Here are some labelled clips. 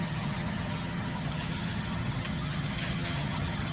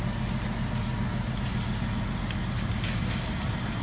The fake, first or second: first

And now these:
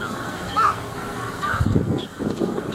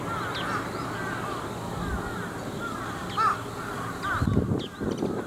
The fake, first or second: first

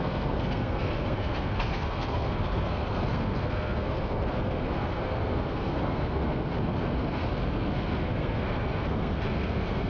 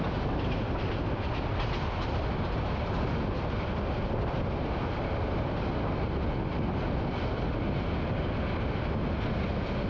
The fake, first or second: first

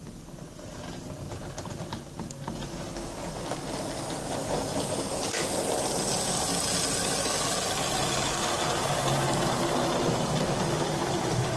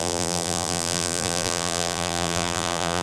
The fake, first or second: second